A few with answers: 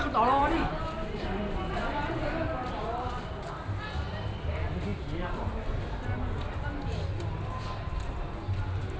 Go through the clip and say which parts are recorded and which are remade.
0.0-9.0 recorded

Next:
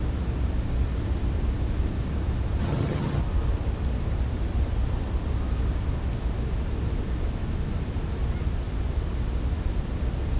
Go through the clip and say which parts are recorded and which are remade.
0.0-2.6 recorded; 2.6-3.2 remade; 3.2-10.4 recorded

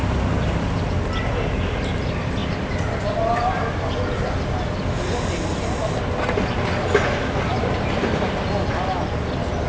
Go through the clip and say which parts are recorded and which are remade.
0.0-9.7 recorded

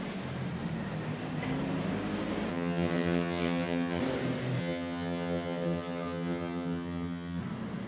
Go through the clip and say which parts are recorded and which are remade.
0.0-2.5 recorded; 2.5-4.0 remade; 4.0-4.6 recorded; 4.6-7.4 remade; 7.4-7.9 recorded

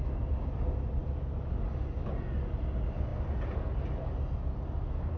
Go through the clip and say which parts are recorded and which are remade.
0.0-5.2 recorded

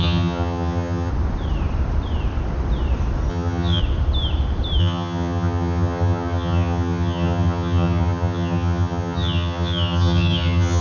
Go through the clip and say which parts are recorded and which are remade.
0.0-1.1 remade; 1.1-3.3 recorded; 3.3-3.8 remade; 3.8-4.8 recorded; 4.8-10.8 remade